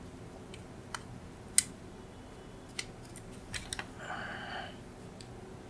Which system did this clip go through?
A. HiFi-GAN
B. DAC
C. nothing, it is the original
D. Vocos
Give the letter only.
C